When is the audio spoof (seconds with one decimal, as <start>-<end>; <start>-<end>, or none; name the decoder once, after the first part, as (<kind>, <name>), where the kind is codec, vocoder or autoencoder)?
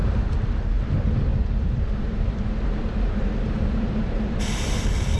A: 0.0-0.8 (vocoder, BigVGAN v2); 1.3-4.4